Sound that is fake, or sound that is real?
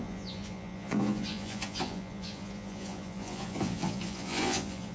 fake